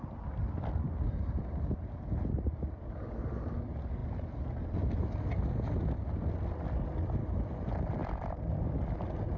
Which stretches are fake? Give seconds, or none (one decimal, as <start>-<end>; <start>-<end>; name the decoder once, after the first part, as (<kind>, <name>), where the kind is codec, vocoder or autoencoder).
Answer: 8.0-9.0 (vocoder, BigVGAN v2)